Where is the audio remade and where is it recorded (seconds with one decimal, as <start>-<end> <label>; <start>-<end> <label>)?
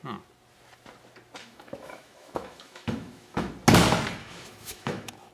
0.0-1.4 recorded; 1.4-3.5 remade; 3.5-4.2 recorded; 4.2-5.3 remade